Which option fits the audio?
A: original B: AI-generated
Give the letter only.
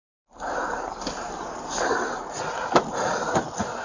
A